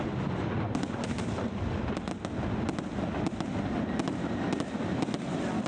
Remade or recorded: recorded